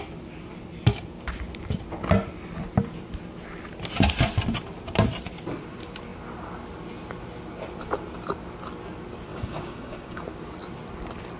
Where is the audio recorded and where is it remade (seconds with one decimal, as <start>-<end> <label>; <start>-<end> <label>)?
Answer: 0.0-9.3 recorded; 9.3-10.2 remade; 10.2-11.4 recorded